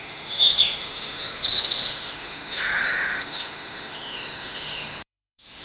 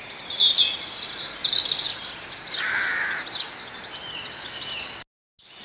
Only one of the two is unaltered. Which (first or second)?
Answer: second